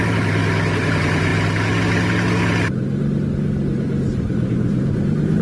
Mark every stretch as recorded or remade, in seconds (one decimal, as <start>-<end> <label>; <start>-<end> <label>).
0.0-0.4 remade; 0.4-0.9 recorded; 0.9-1.3 remade; 1.3-4.5 recorded; 4.5-5.4 remade

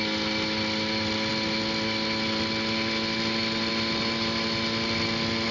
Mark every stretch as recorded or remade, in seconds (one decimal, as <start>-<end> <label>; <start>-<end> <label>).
0.0-5.5 recorded

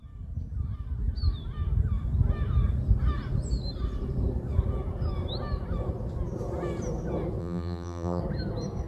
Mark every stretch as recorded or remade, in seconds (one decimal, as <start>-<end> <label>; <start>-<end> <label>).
0.0-7.4 recorded; 7.4-8.2 remade; 8.2-8.9 recorded

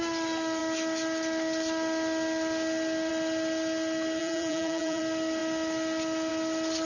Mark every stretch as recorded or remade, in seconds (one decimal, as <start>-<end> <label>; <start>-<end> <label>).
0.0-4.2 recorded; 4.2-5.0 remade; 5.0-6.9 recorded

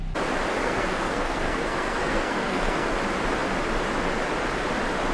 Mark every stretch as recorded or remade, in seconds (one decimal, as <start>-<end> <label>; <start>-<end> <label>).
0.0-0.6 recorded; 0.6-2.9 remade; 2.9-5.1 recorded

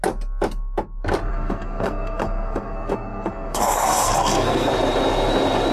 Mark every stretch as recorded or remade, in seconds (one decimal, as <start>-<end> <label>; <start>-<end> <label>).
0.0-1.3 recorded; 1.3-4.7 remade; 4.7-5.7 recorded